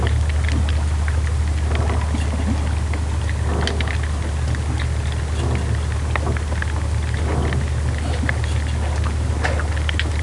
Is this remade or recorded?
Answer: recorded